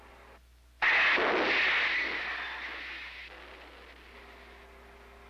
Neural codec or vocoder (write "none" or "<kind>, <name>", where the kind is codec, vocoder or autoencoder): none